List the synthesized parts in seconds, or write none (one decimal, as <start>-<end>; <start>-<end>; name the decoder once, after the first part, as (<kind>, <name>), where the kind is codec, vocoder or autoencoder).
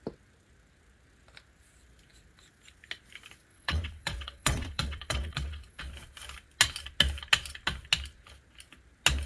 3.5-5.8 (vocoder, WaveNeXt)